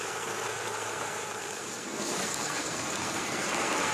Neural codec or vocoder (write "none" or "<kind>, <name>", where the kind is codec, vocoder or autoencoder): codec, SNAC